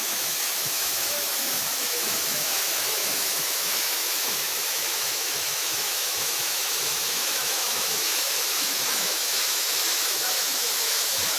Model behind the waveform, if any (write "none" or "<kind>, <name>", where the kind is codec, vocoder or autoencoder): autoencoder, DAC-VAE